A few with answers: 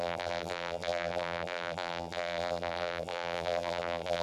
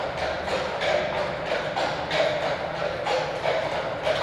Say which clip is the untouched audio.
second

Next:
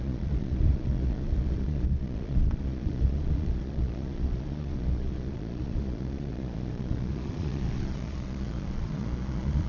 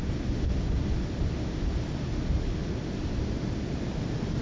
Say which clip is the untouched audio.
second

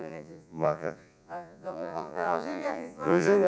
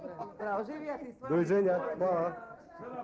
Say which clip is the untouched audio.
second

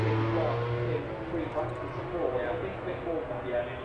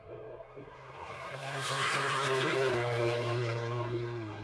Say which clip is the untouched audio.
first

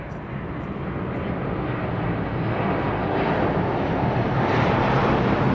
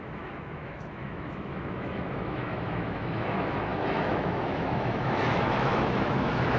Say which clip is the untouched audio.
first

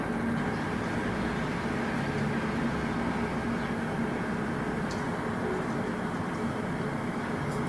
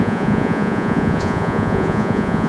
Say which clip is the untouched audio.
first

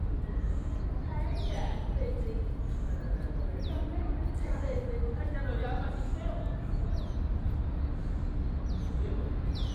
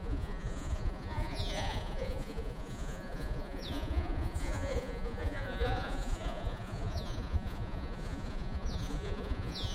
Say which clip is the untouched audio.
first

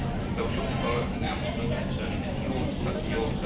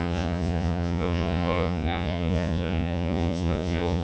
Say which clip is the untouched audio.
first